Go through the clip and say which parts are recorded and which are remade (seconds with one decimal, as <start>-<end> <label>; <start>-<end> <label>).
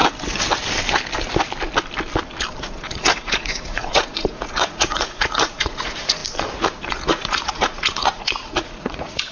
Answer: 0.0-2.6 recorded; 2.6-6.2 remade; 6.2-6.9 recorded; 6.9-9.3 remade